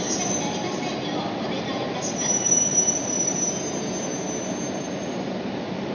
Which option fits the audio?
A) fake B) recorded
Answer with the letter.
B